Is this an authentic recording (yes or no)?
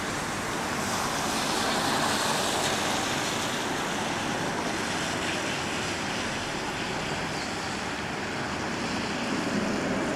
yes